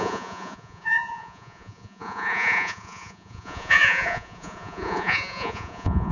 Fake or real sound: fake